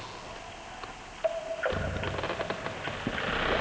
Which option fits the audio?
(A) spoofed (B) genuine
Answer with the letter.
B